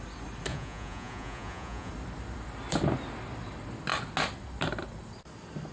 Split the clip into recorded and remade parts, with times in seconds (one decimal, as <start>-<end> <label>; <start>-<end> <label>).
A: 0.0-0.5 recorded; 0.5-1.9 remade; 1.9-5.7 recorded